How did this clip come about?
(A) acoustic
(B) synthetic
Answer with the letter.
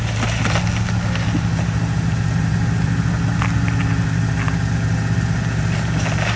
A